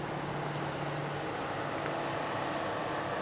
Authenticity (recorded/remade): recorded